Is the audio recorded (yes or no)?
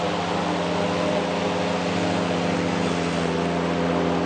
yes